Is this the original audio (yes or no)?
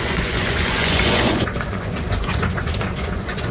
no